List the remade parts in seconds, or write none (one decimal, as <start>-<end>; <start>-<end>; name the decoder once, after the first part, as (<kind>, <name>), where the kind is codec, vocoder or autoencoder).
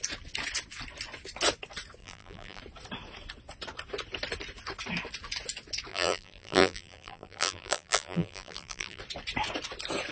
2.0-2.6 (vocoder, BigVGAN v2); 5.9-9.0